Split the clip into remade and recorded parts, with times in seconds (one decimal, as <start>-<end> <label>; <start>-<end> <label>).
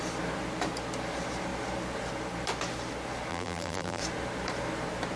0.0-3.3 recorded; 3.3-4.0 remade; 4.0-5.2 recorded